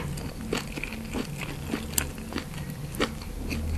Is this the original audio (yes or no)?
yes